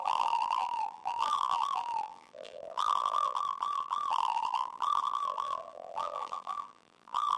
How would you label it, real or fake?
fake